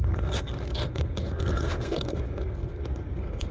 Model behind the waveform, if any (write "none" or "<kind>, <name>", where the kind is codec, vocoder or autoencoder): codec, SNAC